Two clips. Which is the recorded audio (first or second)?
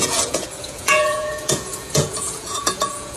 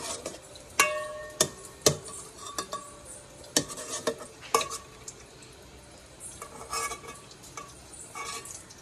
second